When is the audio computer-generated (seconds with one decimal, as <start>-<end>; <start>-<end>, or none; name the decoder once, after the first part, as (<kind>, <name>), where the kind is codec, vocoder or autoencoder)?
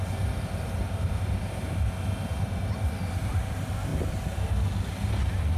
none